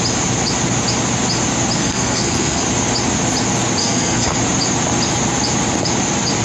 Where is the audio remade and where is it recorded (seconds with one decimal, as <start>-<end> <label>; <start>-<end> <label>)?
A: 0.0-1.8 recorded; 1.8-2.6 remade; 2.6-3.8 recorded; 3.8-4.4 remade; 4.4-6.4 recorded

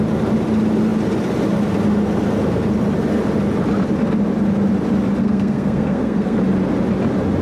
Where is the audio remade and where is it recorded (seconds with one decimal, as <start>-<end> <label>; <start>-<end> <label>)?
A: 0.0-5.2 recorded; 5.2-6.4 remade; 6.4-7.4 recorded

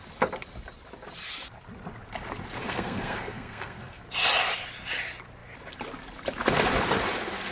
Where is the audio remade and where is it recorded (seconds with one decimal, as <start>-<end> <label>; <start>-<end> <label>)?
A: 0.0-2.6 recorded; 2.6-4.0 remade; 4.0-7.5 recorded

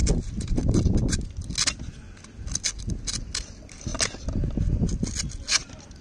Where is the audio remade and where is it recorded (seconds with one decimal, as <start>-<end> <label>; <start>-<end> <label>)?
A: 0.0-6.0 recorded